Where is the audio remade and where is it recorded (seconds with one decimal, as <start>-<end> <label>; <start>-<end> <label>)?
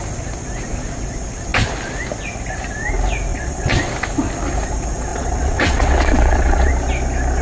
0.0-3.3 recorded; 3.3-3.9 remade; 3.9-5.1 recorded; 5.1-6.7 remade; 6.7-7.4 recorded